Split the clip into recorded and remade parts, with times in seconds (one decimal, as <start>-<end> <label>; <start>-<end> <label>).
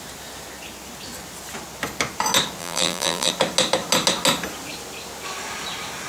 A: 0.0-2.6 recorded; 2.6-3.3 remade; 3.3-6.1 recorded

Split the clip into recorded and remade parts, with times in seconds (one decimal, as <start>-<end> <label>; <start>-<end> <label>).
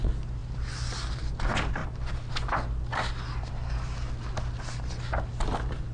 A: 0.0-5.9 recorded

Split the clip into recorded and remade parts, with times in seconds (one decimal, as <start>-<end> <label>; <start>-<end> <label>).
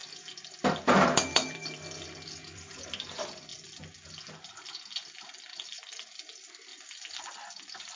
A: 0.0-3.5 remade; 3.5-4.5 recorded; 4.5-8.0 remade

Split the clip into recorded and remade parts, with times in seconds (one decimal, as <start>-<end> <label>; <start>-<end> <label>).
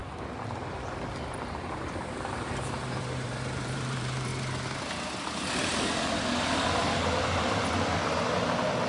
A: 0.0-2.0 recorded; 2.0-4.3 remade; 4.3-5.2 recorded; 5.2-5.7 remade; 5.7-8.9 recorded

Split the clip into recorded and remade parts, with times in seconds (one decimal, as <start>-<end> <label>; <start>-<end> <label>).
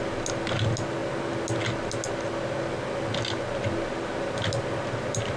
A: 0.0-5.4 recorded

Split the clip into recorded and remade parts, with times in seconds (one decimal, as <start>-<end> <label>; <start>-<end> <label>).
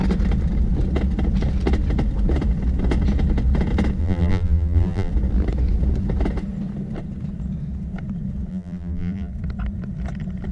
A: 0.0-4.0 recorded; 4.0-5.1 remade; 5.1-8.5 recorded; 8.5-9.3 remade; 9.3-10.5 recorded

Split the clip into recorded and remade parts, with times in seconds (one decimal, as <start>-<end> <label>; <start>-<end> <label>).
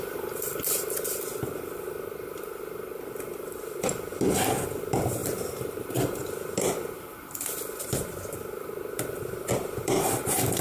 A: 0.0-4.1 remade; 4.1-4.6 recorded; 4.6-10.6 remade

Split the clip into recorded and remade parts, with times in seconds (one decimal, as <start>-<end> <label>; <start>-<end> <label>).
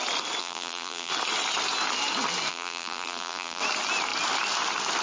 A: 0.0-0.4 recorded; 0.4-1.1 remade; 1.1-2.5 recorded; 2.5-3.6 remade; 3.6-5.0 recorded